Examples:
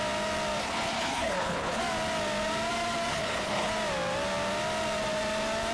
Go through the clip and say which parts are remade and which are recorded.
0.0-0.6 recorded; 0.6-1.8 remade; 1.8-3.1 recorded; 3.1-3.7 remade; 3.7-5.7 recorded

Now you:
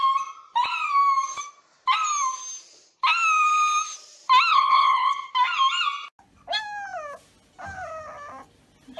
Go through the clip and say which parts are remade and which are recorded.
0.0-4.5 recorded; 4.5-5.1 remade; 5.1-9.0 recorded

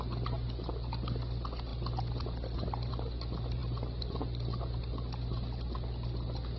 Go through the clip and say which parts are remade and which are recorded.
0.0-6.6 recorded

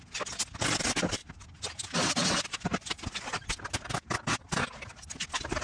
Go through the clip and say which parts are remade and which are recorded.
0.0-5.6 recorded